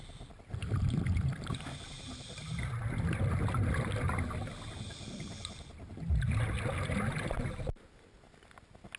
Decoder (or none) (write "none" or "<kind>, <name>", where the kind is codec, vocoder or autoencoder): none